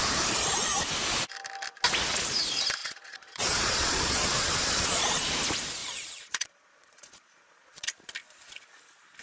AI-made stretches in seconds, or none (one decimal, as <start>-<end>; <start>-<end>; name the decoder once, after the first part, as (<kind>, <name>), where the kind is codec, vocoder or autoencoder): 2.8-5.3 (vocoder, Vocos); 5.8-7.9